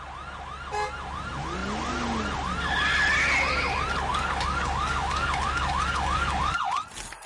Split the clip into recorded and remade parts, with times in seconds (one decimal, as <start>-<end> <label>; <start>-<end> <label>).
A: 0.0-4.1 recorded; 4.1-6.6 remade; 6.6-7.3 recorded